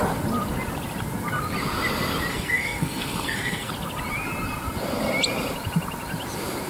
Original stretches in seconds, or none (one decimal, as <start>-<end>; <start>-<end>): 0.0-2.3; 3.7-6.7